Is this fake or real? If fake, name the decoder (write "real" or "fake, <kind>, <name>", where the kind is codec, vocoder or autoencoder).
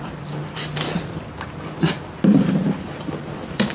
real